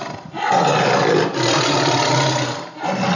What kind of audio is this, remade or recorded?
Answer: recorded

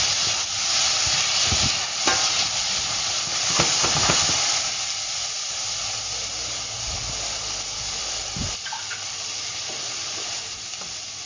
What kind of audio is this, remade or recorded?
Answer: recorded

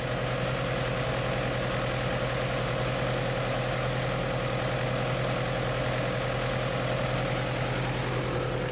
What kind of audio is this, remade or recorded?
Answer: recorded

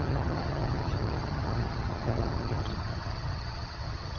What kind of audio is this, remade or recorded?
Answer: remade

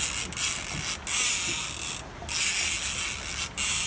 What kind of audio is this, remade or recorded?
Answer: recorded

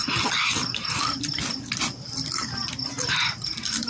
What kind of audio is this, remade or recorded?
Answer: recorded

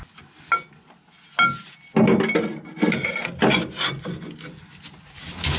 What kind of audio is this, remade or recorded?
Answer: recorded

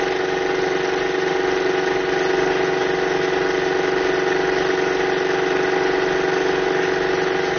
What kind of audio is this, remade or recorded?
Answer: recorded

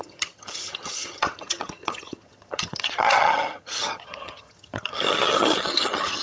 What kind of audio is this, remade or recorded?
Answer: remade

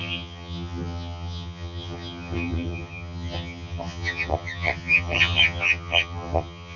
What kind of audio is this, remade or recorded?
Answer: remade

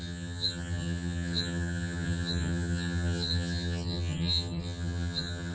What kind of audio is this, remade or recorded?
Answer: remade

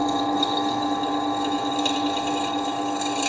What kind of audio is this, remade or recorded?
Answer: recorded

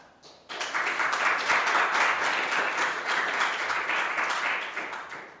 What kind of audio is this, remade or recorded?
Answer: recorded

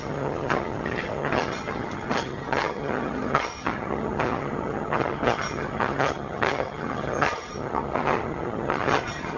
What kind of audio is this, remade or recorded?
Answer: remade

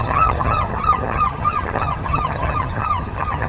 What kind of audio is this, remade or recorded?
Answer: remade